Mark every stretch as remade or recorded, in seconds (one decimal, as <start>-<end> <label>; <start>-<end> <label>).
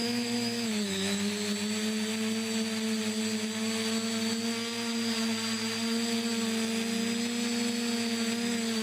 0.0-1.3 remade; 1.3-8.8 recorded